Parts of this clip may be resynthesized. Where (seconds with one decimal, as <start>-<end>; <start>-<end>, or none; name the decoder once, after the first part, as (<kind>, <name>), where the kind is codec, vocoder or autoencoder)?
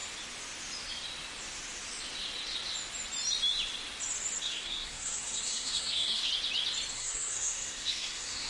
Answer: 4.4-6.3 (codec, SNAC); 6.9-8.5